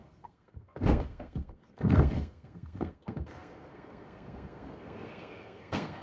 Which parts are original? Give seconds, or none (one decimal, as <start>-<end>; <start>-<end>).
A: none